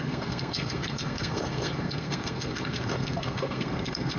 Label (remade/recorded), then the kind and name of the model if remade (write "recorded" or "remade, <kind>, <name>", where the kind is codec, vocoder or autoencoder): remade, codec, SNAC